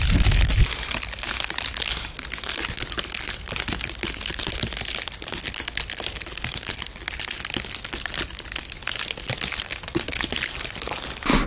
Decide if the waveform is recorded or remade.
recorded